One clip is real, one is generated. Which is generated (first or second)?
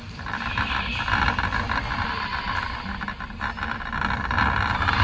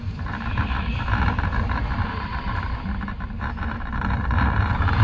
second